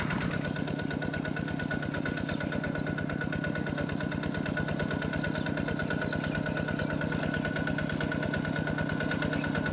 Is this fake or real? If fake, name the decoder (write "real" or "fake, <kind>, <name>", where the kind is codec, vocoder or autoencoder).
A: real